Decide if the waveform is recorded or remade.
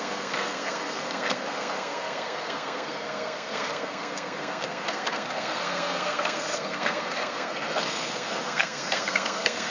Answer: remade